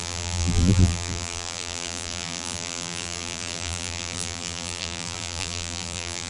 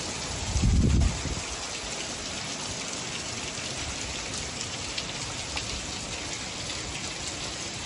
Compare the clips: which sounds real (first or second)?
second